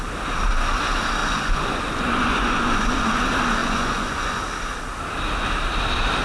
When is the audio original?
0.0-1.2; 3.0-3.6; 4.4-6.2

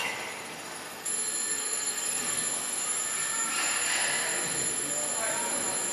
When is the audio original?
0.0-1.5; 2.4-5.9

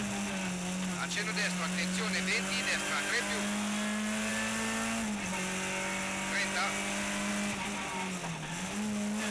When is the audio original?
0.0-9.3

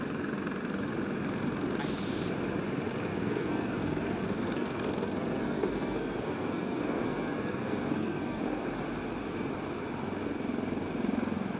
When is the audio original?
0.0-3.1; 8.4-11.6